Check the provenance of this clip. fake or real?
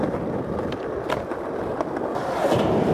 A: fake